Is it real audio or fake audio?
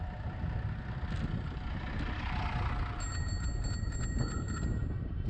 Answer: real